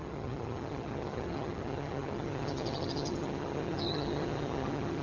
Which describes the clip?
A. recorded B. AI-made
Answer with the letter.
B